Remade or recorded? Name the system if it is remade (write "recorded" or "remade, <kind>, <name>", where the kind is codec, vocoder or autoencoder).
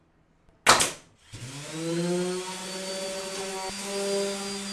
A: recorded